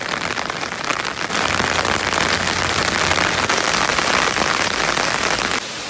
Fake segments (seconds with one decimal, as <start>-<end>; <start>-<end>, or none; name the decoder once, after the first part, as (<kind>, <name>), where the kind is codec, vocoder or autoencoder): none